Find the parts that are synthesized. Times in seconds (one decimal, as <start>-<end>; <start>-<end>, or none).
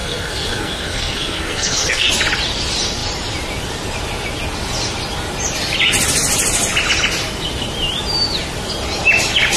0.0-2.1